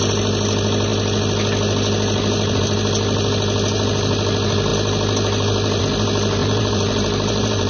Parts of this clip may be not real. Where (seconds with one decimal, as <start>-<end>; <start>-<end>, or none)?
6.4-7.7